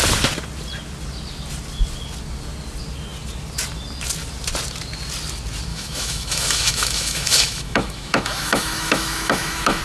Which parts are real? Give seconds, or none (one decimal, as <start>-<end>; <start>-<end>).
0.0-5.7